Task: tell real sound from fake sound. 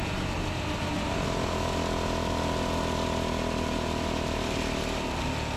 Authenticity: real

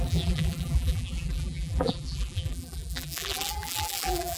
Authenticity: fake